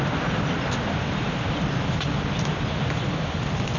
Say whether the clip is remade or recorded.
recorded